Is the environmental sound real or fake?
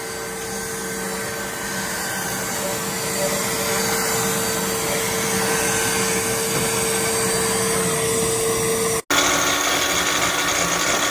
real